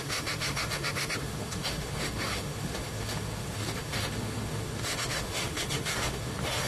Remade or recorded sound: remade